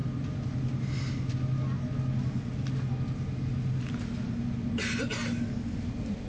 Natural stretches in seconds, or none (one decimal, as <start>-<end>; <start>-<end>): 0.0-6.3